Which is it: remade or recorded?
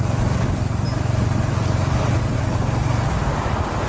recorded